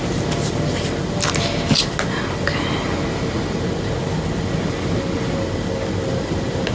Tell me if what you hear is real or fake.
real